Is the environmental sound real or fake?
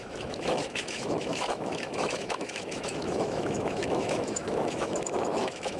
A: fake